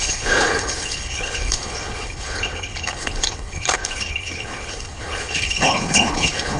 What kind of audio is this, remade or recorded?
remade